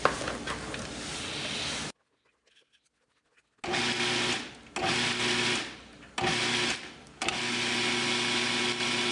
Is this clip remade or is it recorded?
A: recorded